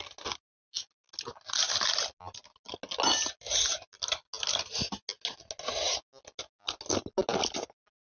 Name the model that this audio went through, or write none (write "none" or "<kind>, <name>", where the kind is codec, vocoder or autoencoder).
none